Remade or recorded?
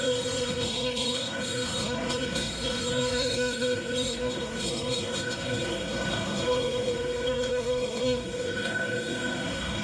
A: remade